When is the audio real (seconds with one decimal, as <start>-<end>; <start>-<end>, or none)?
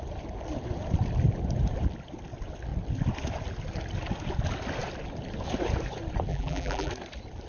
0.0-6.3; 6.9-7.5